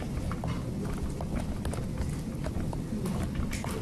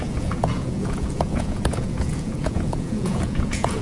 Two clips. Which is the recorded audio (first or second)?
first